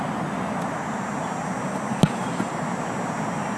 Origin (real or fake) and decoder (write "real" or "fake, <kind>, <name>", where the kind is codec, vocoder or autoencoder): real